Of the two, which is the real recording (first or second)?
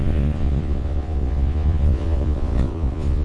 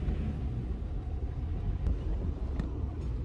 second